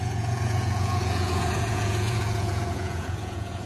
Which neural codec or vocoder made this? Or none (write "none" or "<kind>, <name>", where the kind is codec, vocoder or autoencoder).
vocoder, Vocos